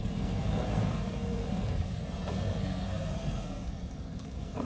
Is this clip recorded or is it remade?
remade